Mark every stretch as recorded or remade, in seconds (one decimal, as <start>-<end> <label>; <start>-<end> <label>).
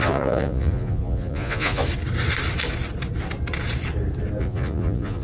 0.0-1.8 remade; 1.8-4.4 recorded; 4.4-5.2 remade